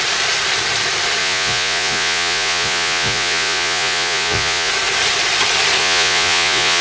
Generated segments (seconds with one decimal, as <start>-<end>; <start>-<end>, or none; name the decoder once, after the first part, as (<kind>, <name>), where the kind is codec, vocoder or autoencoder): 1.2-4.7 (vocoder, Vocos); 5.8-6.8